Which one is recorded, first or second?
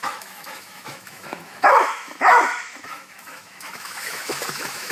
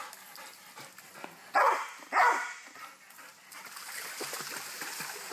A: second